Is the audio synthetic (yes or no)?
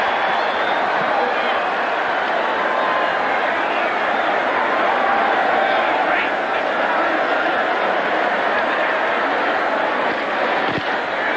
no